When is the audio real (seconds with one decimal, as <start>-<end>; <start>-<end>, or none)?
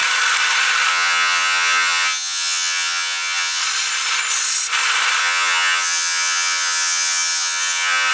0.0-0.9; 3.6-5.2